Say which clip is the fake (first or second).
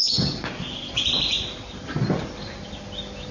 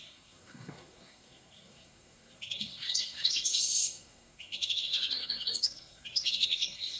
second